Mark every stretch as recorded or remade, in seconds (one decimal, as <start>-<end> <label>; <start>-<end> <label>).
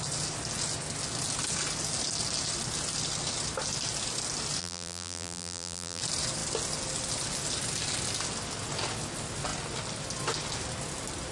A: 0.0-4.6 recorded; 4.6-6.0 remade; 6.0-11.3 recorded